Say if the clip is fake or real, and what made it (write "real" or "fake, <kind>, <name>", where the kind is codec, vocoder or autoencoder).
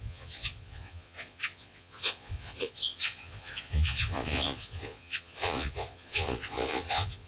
fake, vocoder, Vocos